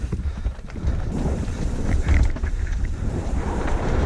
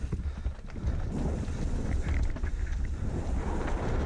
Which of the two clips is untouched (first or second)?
second